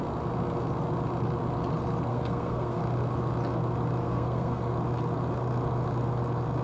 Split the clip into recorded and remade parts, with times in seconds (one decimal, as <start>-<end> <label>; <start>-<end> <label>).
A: 0.0-2.1 recorded; 2.1-2.8 remade; 2.8-4.0 recorded; 4.0-4.6 remade; 4.6-6.6 recorded